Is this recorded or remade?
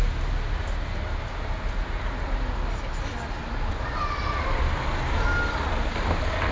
recorded